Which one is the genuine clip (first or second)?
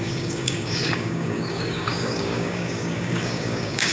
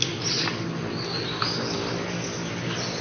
second